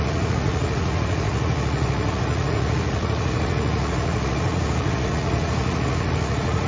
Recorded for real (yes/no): no